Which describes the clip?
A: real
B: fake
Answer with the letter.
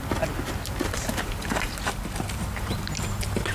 A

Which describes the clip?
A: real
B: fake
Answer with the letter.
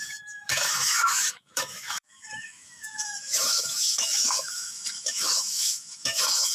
B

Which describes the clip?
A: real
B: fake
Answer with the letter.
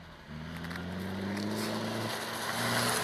A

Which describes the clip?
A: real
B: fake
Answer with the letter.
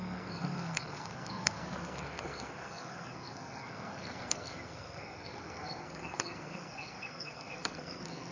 B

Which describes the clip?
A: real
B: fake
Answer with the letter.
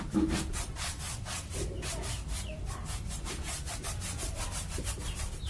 A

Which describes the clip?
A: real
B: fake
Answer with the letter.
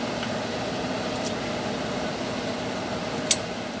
A